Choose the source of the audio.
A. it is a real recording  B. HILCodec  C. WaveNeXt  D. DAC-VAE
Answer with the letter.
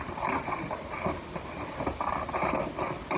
A